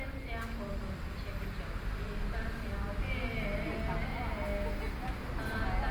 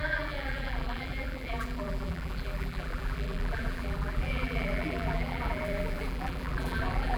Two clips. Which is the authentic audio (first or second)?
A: first